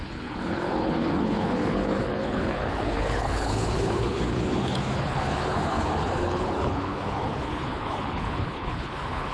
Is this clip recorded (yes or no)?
no